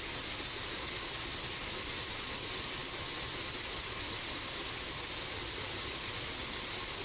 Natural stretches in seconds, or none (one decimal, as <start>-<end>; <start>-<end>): 0.0-7.0